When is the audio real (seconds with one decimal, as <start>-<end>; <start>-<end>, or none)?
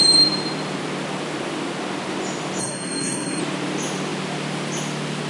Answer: 0.0-2.6; 3.4-5.3